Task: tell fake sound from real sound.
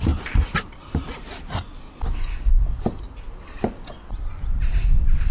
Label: real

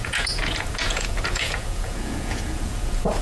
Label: fake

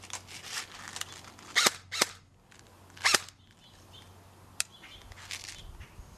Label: real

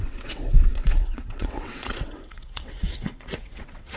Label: fake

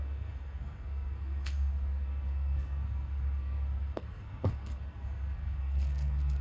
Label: fake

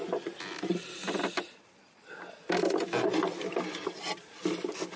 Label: real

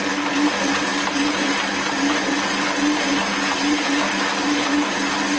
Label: real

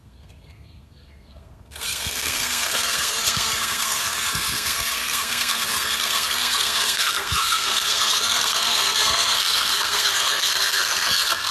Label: fake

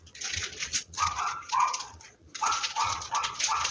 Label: fake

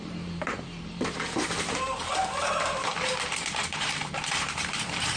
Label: fake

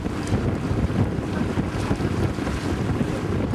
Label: fake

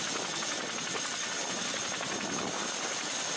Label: real